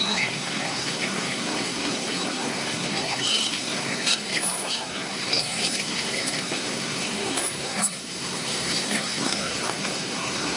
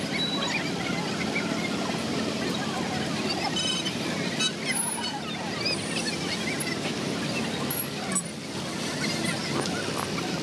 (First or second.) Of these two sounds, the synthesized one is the first